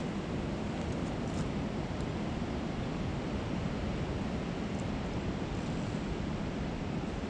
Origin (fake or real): real